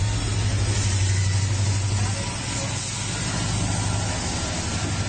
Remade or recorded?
recorded